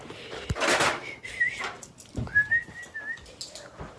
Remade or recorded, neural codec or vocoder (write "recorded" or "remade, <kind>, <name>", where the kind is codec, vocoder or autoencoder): recorded